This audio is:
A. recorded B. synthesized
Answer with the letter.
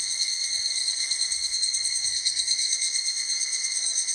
B